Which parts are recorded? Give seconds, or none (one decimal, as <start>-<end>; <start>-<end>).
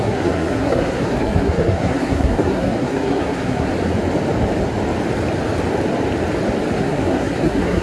3.7-6.8